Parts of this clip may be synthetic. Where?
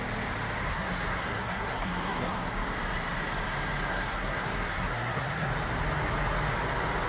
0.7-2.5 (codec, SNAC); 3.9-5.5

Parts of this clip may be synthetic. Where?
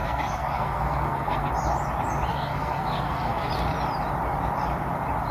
0.0-1.5 (codec, SNAC); 2.3-3.5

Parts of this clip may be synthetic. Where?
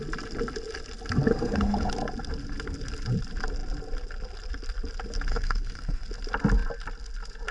1.3-1.9 (codec, SNAC); 5.3-6.1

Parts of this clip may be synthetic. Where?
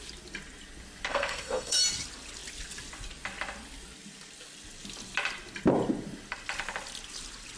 1.1-1.8 (codec, SNAC)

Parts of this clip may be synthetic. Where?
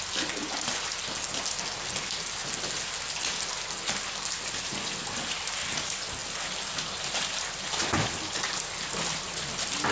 none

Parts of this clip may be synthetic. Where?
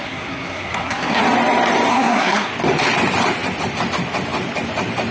0.0-1.2 (codec, SNAC); 1.9-2.5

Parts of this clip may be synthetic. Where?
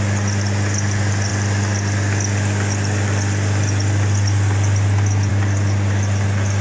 none